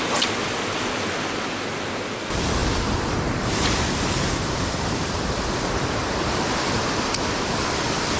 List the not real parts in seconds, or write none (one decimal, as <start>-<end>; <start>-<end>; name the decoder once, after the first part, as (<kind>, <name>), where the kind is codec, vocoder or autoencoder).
2.6-6.4 (vocoder, BigVGAN v2)